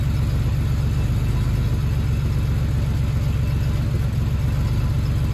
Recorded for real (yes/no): yes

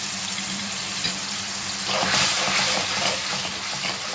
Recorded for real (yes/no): no